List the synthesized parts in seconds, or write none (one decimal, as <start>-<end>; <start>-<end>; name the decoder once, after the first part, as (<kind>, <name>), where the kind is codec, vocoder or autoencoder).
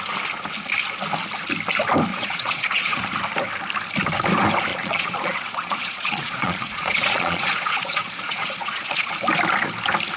2.1-3.0 (vocoder, Vocos); 4.7-9.1